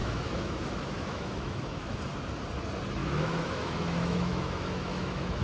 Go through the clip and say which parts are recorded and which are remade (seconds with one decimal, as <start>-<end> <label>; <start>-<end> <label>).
0.0-2.0 remade; 2.0-3.0 recorded; 3.0-5.4 remade